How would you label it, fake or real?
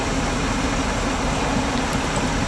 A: real